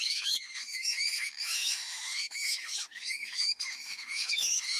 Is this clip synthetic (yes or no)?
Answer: yes